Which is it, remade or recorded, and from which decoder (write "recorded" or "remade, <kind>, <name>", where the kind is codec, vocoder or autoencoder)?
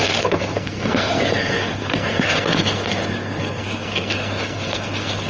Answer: remade, codec, SNAC